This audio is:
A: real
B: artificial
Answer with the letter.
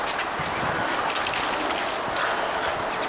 A